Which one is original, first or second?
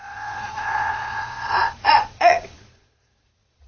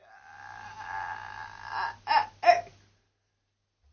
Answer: second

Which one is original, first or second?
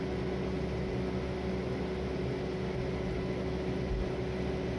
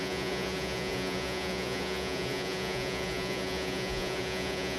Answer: first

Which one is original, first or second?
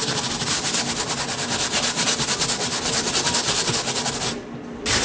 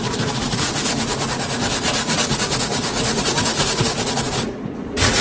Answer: first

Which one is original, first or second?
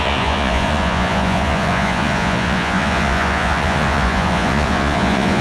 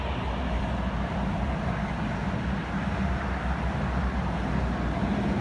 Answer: second